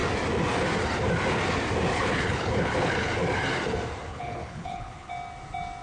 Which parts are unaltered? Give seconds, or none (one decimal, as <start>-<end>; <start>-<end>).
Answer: 0.0-1.9; 3.1-4.1; 5.1-5.8